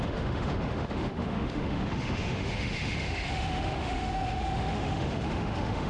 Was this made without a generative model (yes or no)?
no